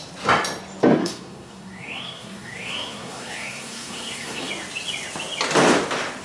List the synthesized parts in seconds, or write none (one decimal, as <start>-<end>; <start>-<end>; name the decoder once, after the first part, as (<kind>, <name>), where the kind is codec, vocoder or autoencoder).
1.0-4.5 (codec, SNAC)